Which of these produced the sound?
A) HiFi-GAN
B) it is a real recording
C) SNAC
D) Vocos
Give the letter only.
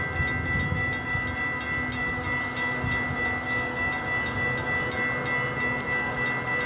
B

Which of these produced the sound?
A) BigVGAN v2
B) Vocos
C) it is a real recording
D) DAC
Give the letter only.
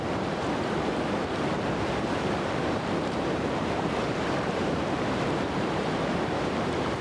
A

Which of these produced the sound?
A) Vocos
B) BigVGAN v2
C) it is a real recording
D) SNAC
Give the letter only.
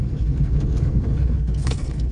D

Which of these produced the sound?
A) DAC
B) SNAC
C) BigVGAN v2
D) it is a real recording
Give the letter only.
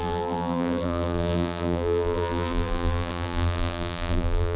C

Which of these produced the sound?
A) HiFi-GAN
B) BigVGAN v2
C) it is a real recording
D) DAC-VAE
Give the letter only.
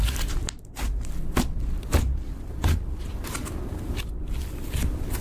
C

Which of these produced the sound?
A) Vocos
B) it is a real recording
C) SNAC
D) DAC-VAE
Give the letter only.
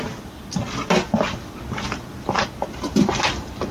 B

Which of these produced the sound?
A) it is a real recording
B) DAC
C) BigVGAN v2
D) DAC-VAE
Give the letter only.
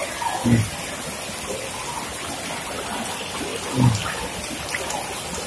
A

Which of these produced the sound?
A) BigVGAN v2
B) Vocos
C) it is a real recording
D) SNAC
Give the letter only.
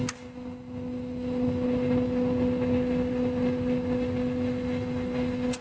C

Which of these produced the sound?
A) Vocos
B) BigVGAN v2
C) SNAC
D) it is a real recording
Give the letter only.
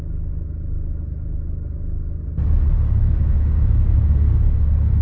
D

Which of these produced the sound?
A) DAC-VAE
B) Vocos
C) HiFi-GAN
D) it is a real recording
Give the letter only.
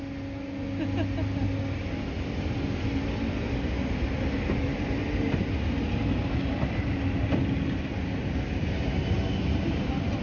D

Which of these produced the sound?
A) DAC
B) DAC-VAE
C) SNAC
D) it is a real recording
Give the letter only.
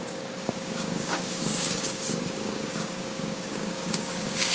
A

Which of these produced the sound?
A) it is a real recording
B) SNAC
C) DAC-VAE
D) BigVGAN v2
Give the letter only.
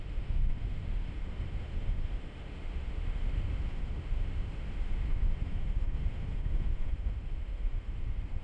C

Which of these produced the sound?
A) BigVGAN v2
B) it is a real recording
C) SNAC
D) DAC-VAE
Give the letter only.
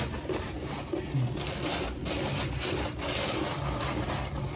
B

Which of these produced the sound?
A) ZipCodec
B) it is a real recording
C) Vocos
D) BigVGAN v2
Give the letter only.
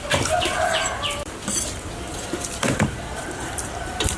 D